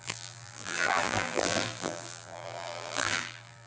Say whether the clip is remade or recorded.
remade